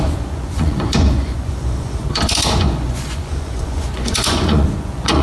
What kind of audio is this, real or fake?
fake